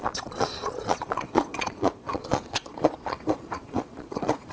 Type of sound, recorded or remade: remade